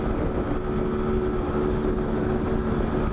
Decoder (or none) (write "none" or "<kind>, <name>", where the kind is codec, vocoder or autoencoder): none